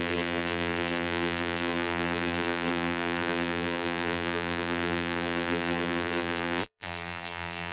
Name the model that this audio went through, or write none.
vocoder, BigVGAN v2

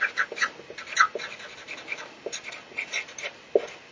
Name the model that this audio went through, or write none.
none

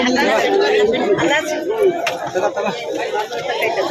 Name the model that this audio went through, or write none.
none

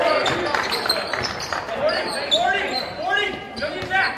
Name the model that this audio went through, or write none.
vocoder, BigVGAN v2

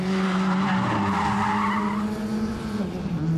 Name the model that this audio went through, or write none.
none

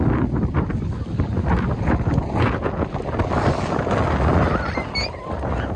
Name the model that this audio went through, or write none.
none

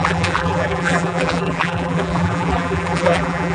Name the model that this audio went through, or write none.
vocoder, BigVGAN v2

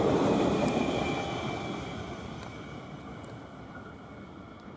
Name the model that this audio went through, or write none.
none